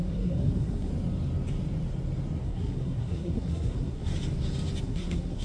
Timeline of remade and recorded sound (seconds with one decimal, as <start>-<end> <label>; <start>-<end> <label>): 0.0-0.9 remade; 0.9-2.4 recorded; 2.4-4.1 remade; 4.1-4.8 recorded; 4.8-5.4 remade